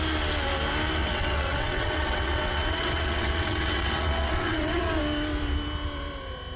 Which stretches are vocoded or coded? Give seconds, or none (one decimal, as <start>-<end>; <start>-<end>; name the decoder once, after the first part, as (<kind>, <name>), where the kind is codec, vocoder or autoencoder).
1.0-5.0 (vocoder, WaveNeXt)